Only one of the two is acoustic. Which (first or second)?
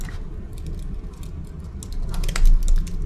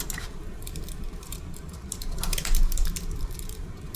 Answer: first